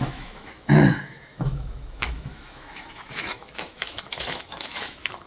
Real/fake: fake